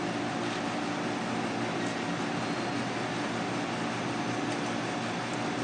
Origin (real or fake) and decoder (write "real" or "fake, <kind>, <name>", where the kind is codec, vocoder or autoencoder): real